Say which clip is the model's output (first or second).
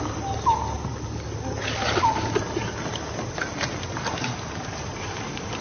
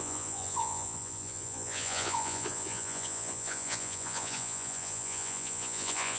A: second